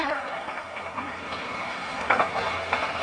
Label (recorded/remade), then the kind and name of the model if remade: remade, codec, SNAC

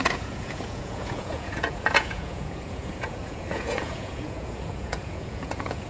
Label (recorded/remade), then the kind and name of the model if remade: remade, vocoder, Vocos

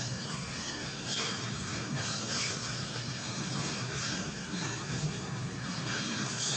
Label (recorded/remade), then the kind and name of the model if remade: remade, codec, SNAC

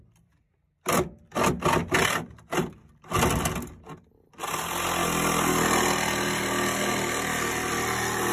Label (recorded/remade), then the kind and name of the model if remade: recorded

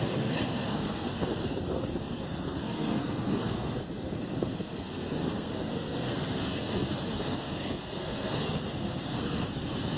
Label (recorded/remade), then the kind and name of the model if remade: remade, codec, SNAC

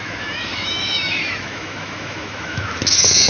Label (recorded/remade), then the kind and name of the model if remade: remade, autoencoder, DAC-VAE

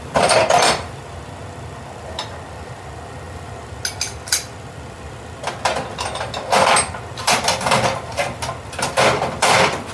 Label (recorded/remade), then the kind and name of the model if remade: recorded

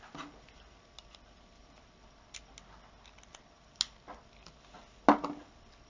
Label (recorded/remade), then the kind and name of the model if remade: recorded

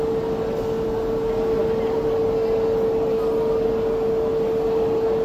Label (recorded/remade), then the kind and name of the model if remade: recorded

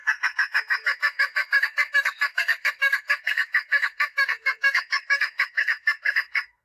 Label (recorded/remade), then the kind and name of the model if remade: remade, codec, SNAC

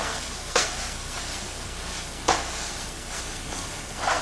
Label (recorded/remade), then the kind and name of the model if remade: remade, codec, SNAC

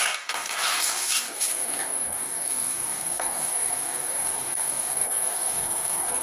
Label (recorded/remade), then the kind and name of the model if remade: remade, codec, DAC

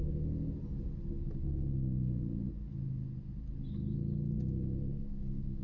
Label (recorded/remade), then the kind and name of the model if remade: recorded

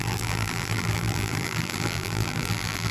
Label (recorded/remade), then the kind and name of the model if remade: remade, vocoder, BigVGAN v2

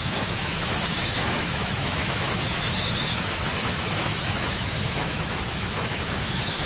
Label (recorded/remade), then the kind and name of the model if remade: remade, autoencoder, DAC-VAE